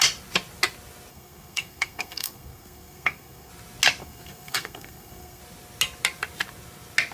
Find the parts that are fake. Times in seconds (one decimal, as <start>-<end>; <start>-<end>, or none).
1.1-3.5; 4.0-5.4